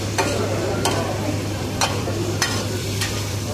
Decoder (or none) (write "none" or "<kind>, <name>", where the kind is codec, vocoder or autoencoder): vocoder, BigVGAN v2